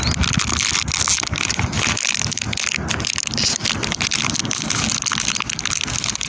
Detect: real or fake real